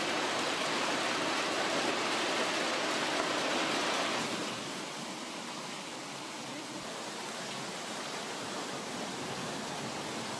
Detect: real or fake real